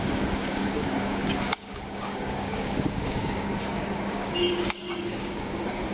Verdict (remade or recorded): remade